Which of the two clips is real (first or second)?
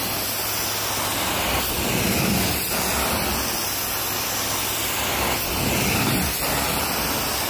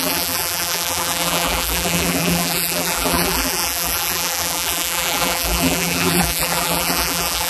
first